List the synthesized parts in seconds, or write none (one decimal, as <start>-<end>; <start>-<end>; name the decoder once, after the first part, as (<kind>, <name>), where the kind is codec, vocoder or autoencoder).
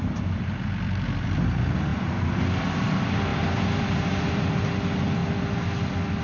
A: 1.9-2.4 (vocoder, BigVGAN v2); 3.3-4.5